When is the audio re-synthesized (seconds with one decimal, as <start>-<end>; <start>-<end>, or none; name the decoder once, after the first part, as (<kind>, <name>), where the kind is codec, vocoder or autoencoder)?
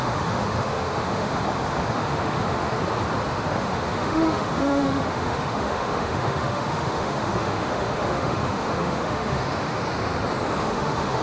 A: 0.0-1.3 (autoencoder, DAC-VAE); 1.9-2.8; 3.3-9.8; 10.6-11.2